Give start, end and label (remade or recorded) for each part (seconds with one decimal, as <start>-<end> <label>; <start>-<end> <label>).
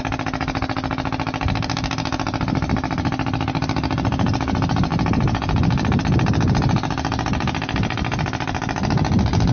0.0-9.5 recorded